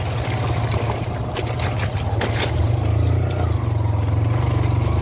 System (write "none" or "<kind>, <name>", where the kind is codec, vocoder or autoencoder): none